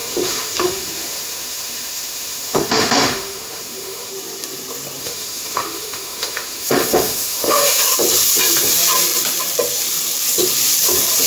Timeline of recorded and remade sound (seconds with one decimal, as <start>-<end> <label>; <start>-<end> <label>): 0.0-4.1 remade; 4.1-5.0 recorded; 5.0-7.8 remade; 7.8-11.3 recorded